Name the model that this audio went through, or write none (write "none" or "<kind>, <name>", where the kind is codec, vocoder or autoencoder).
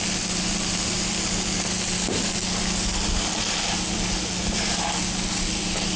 none